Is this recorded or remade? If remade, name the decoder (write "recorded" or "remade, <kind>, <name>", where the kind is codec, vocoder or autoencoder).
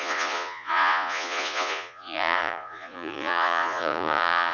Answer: remade, vocoder, Vocos